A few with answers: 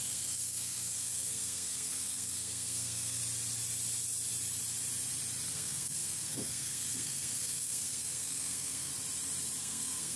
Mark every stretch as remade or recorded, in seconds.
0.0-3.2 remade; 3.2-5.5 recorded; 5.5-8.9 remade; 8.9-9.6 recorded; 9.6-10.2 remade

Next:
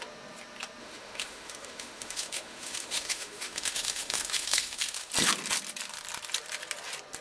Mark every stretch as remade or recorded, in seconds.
0.0-0.8 recorded; 0.8-5.1 remade; 5.1-7.2 recorded

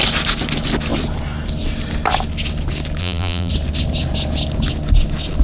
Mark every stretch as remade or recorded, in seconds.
0.0-3.0 recorded; 3.0-3.5 remade; 3.5-5.4 recorded

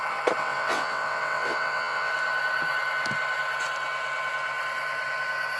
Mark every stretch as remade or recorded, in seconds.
0.0-0.4 recorded; 0.4-2.1 remade; 2.1-5.6 recorded

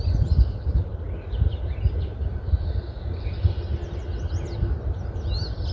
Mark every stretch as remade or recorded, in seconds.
0.0-5.7 recorded

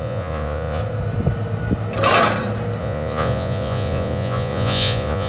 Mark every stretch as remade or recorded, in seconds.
0.0-0.8 remade; 0.8-2.8 recorded; 2.8-5.3 remade